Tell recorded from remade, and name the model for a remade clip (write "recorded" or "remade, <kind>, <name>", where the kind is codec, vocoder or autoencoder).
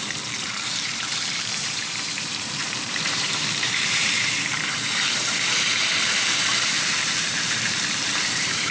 remade, vocoder, BigVGAN v2